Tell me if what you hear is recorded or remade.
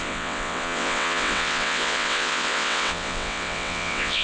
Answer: remade